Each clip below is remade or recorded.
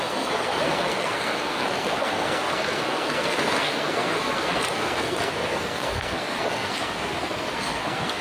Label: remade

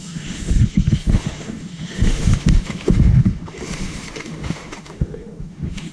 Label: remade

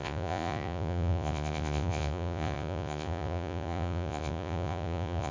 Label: remade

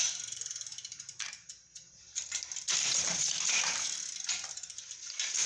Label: remade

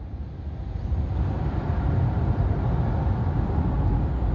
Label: recorded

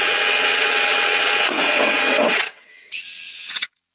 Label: remade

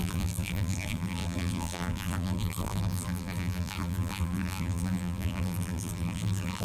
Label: remade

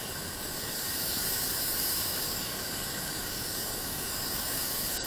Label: remade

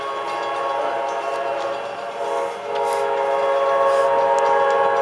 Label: recorded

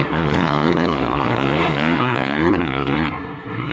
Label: remade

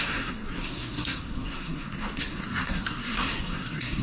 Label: remade